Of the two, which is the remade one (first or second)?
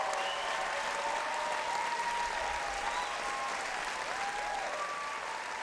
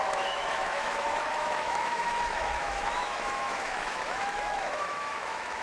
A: second